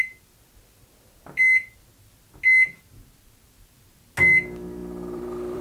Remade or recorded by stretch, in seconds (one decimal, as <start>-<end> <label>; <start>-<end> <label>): 0.0-4.8 recorded; 4.8-5.6 remade

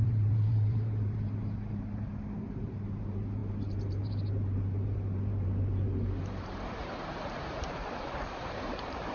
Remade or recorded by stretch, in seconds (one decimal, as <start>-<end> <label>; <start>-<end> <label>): 0.0-9.1 remade

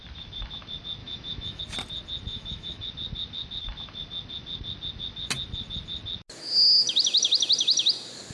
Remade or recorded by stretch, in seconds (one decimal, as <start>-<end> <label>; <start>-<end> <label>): 0.0-1.0 recorded; 1.0-1.6 remade; 1.6-2.3 recorded; 2.3-2.9 remade; 2.9-8.3 recorded

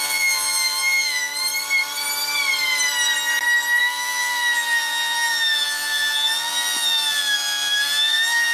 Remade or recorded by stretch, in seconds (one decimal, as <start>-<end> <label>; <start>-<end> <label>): 0.0-1.3 remade; 1.3-3.8 recorded; 3.8-8.5 remade

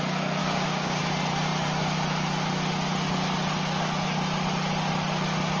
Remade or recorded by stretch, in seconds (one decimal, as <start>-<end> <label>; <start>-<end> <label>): 0.0-0.4 recorded; 0.4-1.0 remade; 1.0-5.6 recorded

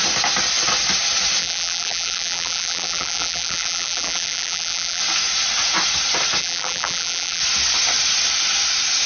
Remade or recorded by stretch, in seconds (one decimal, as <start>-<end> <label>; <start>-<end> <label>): 0.0-1.4 recorded; 1.4-5.0 remade; 5.0-6.4 recorded; 6.4-7.4 remade; 7.4-9.1 recorded